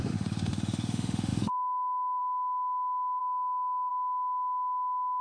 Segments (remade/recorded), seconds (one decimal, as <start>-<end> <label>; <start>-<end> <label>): 0.0-3.2 remade; 3.2-3.9 recorded; 3.9-5.2 remade